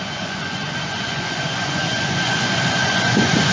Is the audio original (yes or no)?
no